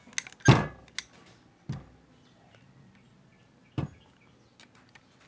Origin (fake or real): real